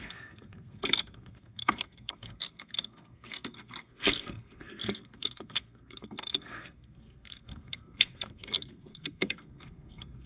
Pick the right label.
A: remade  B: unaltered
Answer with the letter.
A